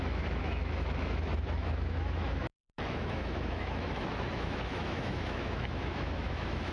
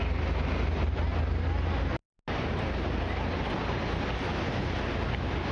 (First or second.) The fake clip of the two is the first